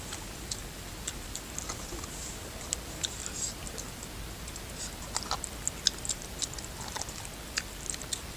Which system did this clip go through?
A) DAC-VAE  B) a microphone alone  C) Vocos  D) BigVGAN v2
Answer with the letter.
B